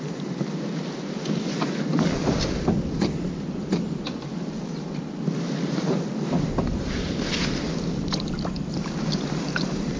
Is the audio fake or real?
real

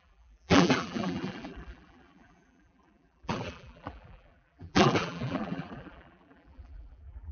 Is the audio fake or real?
fake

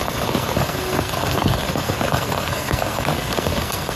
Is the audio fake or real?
fake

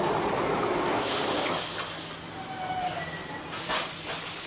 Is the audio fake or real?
real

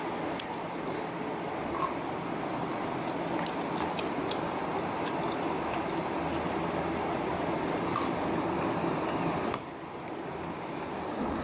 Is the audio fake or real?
real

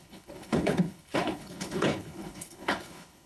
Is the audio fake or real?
fake